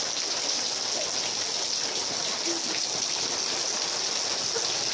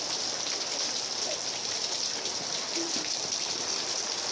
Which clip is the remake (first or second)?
second